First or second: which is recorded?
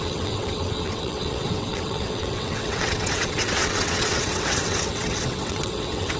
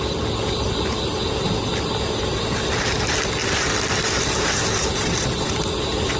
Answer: second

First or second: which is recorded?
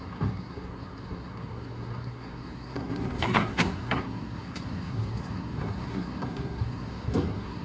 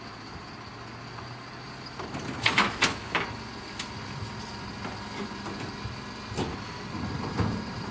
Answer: second